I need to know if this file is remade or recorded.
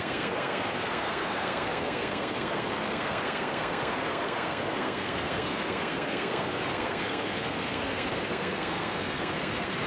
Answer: remade